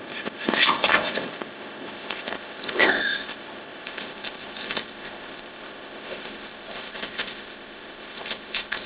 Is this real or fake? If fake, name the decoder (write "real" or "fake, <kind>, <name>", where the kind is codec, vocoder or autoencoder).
fake, codec, ZipCodec